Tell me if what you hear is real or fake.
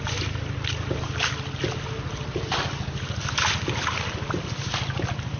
real